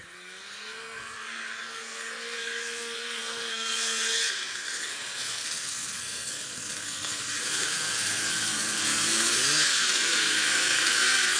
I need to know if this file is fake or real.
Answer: fake